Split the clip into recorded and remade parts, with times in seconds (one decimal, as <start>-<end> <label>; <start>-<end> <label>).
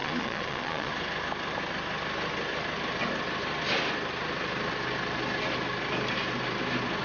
0.0-0.9 remade; 0.9-7.0 recorded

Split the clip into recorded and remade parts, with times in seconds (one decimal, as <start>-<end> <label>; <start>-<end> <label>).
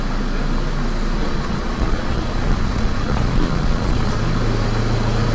0.0-1.2 recorded; 1.2-4.2 remade; 4.2-5.3 recorded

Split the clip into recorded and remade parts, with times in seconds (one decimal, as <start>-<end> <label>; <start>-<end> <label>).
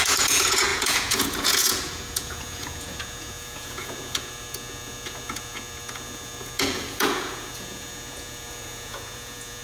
0.0-9.6 remade